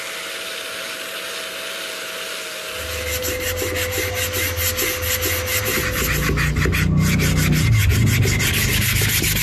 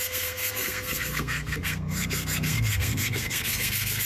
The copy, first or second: second